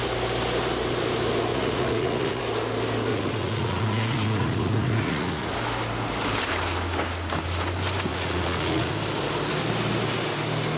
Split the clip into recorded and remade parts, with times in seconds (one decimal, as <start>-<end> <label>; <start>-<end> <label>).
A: 0.0-1.5 recorded; 1.5-2.4 remade; 2.4-3.1 recorded; 3.1-5.5 remade; 5.5-8.1 recorded; 8.1-8.9 remade; 8.9-10.8 recorded